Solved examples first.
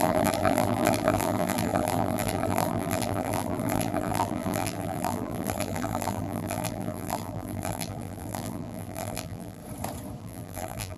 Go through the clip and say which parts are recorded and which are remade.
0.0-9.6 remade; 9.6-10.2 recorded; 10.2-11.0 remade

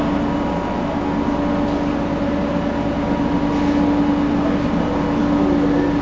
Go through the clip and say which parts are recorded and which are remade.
0.0-6.0 recorded

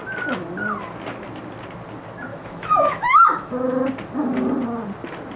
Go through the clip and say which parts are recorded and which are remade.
0.0-2.3 recorded; 2.3-3.5 remade; 3.5-5.4 recorded

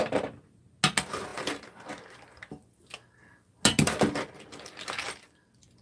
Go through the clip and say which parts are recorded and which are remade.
0.0-5.8 recorded

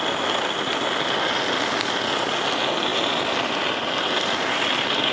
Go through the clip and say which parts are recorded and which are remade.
0.0-5.1 recorded

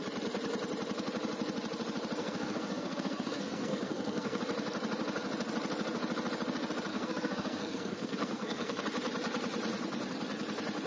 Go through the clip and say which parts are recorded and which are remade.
0.0-2.2 recorded; 2.2-4.4 remade; 4.4-6.9 recorded; 6.9-8.8 remade; 8.8-10.9 recorded

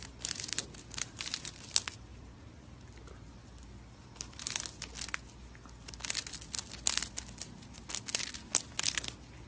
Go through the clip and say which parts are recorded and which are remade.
0.0-1.4 remade; 1.4-2.1 recorded; 2.1-2.7 remade; 2.7-9.5 recorded

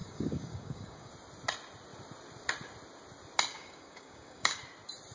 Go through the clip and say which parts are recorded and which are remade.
0.0-1.1 remade; 1.1-3.5 recorded; 3.5-4.6 remade; 4.6-5.1 recorded